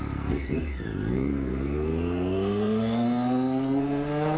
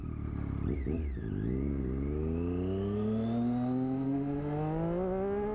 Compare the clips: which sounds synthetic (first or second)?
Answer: first